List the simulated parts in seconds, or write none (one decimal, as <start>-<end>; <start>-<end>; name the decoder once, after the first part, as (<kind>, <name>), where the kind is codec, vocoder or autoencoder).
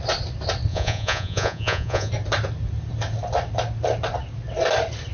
0.7-2.1 (vocoder, Vocos)